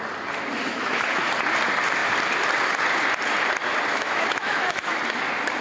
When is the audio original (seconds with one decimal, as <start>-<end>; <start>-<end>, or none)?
0.0-0.7; 1.2-3.9; 5.0-5.6